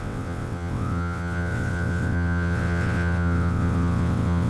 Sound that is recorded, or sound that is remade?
remade